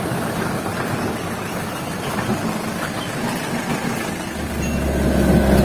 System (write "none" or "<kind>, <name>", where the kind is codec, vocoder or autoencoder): none